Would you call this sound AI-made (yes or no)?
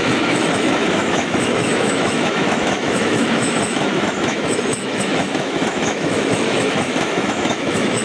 yes